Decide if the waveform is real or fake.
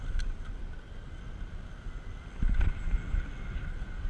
real